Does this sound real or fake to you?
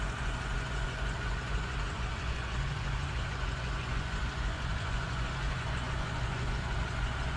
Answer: fake